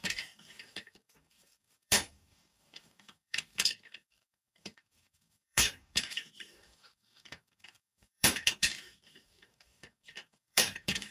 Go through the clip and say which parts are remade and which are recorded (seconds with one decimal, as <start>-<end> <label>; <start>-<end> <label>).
0.0-11.1 remade